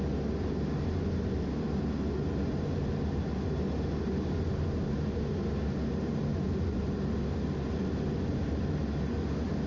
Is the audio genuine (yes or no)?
yes